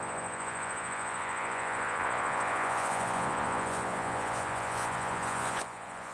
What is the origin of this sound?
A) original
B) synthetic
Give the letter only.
B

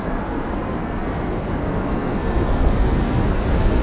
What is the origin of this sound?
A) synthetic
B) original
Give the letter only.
A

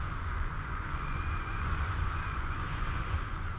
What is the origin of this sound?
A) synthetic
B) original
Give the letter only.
A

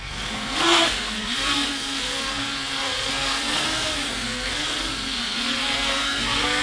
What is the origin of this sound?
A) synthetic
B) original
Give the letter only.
A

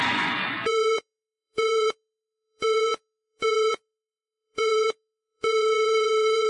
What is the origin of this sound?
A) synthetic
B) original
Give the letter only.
A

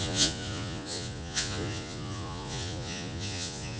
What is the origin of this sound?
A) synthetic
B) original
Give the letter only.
A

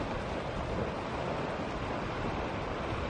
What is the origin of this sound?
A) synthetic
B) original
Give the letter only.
B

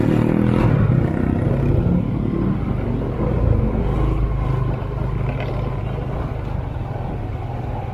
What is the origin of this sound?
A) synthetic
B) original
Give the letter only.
B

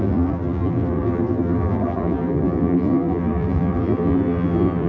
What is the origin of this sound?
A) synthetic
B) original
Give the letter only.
A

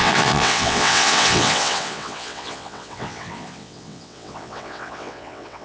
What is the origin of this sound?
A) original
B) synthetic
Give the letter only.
B